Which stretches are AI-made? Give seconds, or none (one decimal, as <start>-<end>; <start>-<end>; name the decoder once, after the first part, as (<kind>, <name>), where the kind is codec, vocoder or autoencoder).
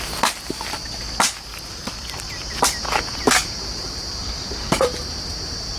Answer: 1.5-4.7 (vocoder, BigVGAN v2)